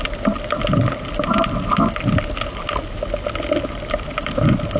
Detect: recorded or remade recorded